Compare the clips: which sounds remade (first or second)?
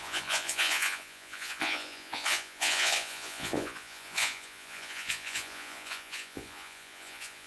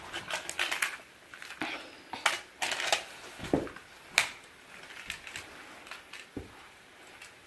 first